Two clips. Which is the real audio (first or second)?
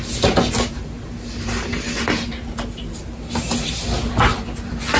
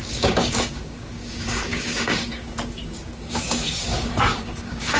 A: first